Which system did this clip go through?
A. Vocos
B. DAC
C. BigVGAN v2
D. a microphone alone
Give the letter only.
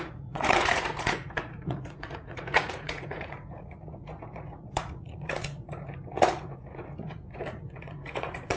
A